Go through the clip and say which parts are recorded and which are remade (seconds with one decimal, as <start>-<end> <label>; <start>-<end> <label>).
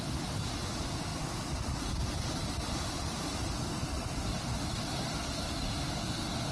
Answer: 0.0-6.5 recorded